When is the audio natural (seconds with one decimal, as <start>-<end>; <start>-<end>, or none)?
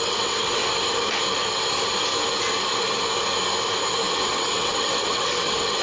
0.6-4.1